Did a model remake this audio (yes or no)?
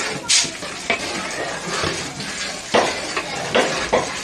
no